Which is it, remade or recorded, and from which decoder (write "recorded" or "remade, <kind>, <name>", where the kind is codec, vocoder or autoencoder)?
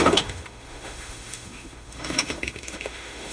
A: remade, autoencoder, DAC-VAE